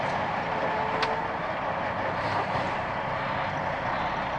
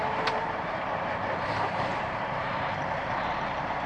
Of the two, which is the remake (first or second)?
second